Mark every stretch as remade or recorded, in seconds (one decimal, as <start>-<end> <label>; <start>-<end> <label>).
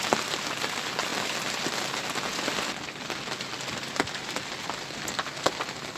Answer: 0.0-4.2 recorded; 4.2-5.0 remade; 5.0-6.0 recorded